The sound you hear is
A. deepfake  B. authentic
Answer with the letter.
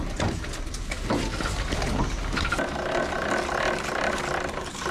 B